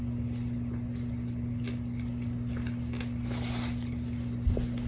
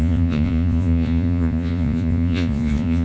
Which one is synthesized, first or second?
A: second